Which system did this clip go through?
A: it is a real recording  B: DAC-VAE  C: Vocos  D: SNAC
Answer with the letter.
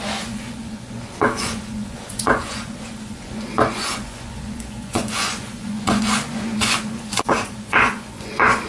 C